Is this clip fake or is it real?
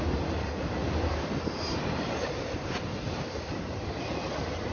fake